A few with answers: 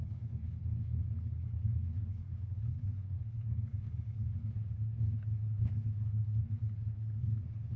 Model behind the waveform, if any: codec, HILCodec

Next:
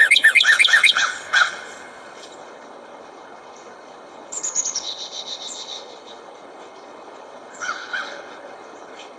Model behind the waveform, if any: codec, HILCodec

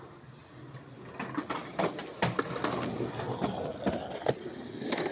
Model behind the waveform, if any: none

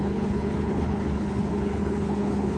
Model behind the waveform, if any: codec, HILCodec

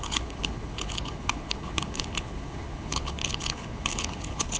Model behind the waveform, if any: codec, HILCodec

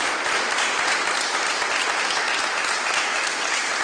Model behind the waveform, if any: none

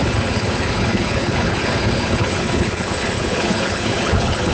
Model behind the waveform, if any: codec, HILCodec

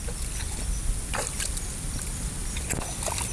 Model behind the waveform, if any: none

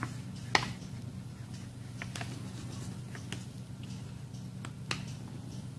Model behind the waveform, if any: none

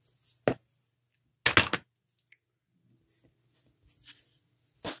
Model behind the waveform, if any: none